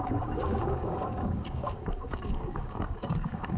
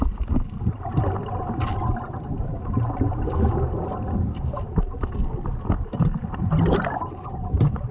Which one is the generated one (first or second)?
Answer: first